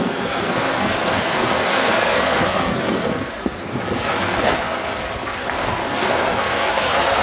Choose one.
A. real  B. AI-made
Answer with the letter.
B